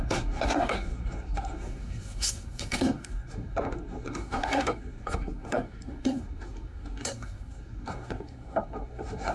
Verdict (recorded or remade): remade